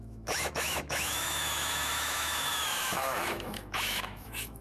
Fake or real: fake